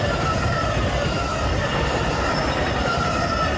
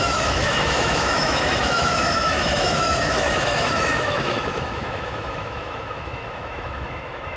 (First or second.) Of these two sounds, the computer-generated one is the second